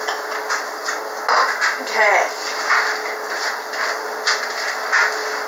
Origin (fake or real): real